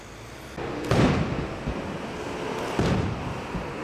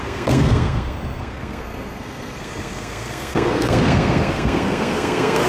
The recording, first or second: first